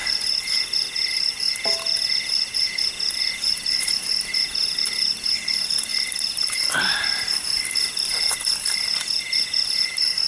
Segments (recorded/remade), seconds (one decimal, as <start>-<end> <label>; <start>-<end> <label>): 0.0-10.3 recorded